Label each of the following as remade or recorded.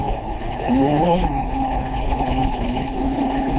remade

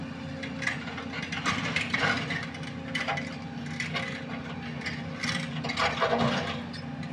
recorded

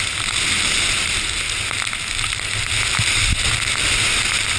recorded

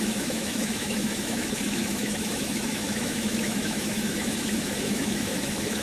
remade